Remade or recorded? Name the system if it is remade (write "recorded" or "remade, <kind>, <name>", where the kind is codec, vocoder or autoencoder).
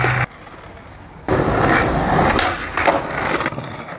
recorded